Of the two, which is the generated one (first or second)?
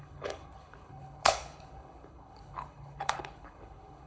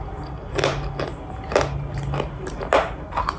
first